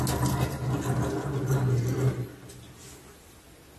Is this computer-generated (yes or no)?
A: no